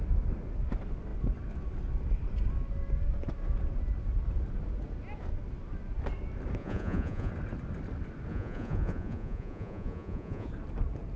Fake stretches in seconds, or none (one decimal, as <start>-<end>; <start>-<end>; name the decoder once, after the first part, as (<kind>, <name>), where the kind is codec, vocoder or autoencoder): 6.6-7.3 (vocoder, Vocos); 8.3-10.5